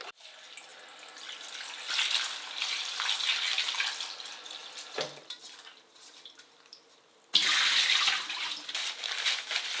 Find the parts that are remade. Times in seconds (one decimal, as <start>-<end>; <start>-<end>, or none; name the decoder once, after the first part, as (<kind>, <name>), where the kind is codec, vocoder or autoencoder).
4.6-9.4 (vocoder, BigVGAN v2)